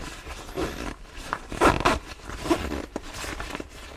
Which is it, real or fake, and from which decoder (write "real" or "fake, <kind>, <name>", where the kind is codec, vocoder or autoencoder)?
real